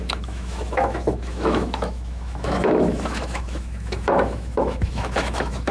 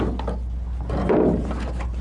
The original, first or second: second